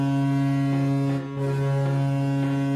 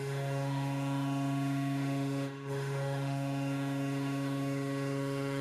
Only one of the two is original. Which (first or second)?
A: first